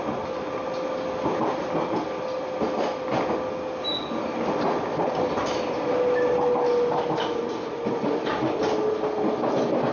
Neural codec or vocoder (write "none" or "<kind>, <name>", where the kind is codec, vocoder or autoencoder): none